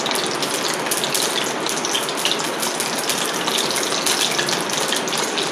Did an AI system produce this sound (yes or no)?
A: no